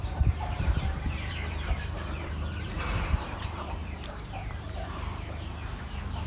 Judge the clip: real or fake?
fake